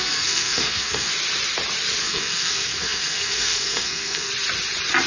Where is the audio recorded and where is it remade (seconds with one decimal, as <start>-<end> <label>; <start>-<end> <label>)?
0.0-1.1 remade; 1.1-2.0 recorded; 2.0-4.3 remade; 4.3-5.1 recorded